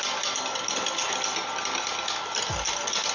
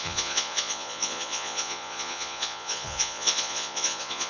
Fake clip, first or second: second